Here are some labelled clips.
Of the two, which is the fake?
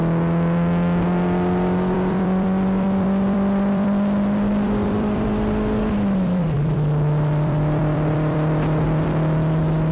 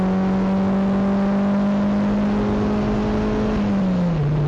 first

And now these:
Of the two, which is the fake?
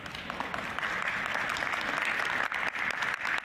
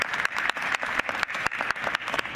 second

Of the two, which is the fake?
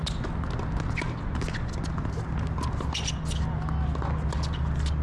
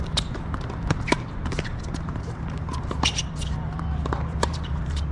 second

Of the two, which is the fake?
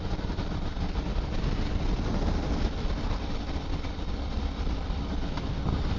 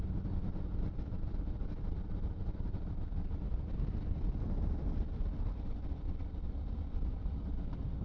second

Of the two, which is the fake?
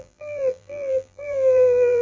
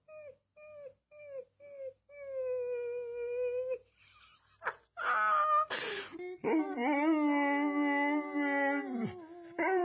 first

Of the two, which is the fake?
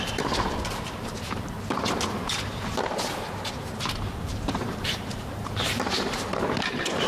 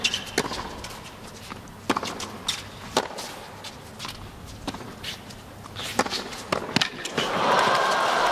first